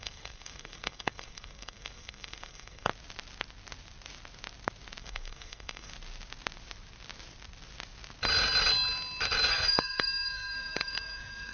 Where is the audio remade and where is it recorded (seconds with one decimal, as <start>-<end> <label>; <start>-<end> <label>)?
0.0-2.9 remade; 2.9-5.0 recorded; 5.0-5.9 remade; 5.9-9.5 recorded; 9.5-11.5 remade